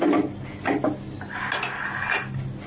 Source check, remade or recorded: recorded